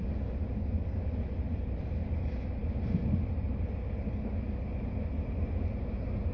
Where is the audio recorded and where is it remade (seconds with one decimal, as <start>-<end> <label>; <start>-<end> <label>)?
0.0-6.3 recorded

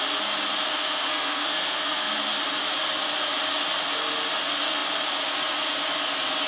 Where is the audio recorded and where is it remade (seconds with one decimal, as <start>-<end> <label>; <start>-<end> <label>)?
0.0-0.7 recorded; 0.7-2.1 remade; 2.1-6.5 recorded

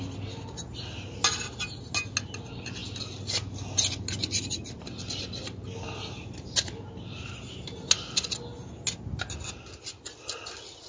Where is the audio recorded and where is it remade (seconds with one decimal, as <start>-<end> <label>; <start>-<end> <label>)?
0.0-10.9 recorded

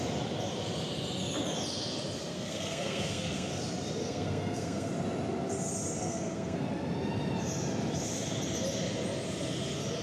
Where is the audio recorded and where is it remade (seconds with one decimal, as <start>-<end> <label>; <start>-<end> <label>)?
0.0-2.3 recorded; 2.3-3.5 remade; 3.5-4.0 recorded; 4.0-4.9 remade; 4.9-6.0 recorded; 6.0-6.7 remade; 6.7-10.0 recorded

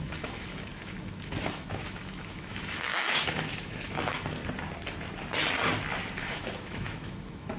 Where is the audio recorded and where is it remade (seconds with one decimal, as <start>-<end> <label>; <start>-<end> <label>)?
0.0-4.4 remade; 4.4-6.2 recorded; 6.2-7.6 remade

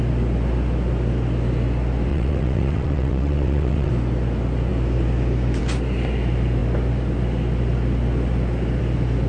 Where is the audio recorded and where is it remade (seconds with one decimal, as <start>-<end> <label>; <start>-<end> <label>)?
0.0-2.1 recorded; 2.1-3.9 remade; 3.9-9.3 recorded